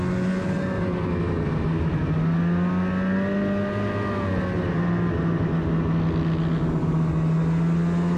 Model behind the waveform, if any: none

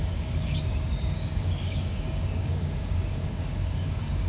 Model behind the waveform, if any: codec, DAC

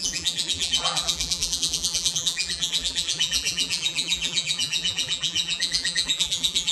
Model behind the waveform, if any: vocoder, BigVGAN v2